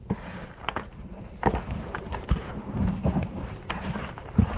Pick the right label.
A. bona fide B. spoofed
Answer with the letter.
B